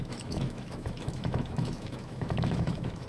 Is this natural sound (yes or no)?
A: no